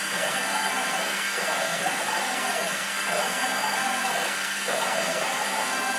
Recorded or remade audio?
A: remade